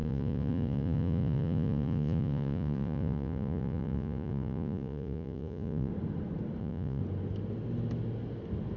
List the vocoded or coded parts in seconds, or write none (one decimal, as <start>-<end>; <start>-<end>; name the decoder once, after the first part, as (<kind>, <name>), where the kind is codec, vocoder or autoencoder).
0.0-5.9 (vocoder, Vocos); 6.6-7.0